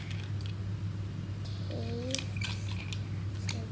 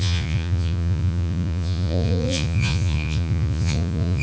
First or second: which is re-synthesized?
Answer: second